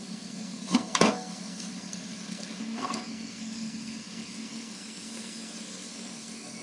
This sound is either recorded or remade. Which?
remade